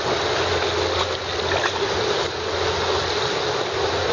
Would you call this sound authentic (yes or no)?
yes